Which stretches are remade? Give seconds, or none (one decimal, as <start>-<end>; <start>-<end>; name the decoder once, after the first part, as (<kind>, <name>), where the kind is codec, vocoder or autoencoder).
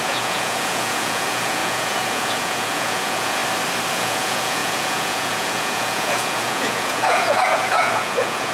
0.0-3.4 (vocoder, Vocos); 3.9-8.5